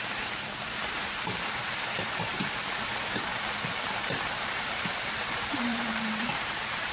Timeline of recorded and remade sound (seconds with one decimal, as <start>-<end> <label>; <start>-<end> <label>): 0.0-3.3 remade; 3.3-3.9 recorded; 3.9-6.9 remade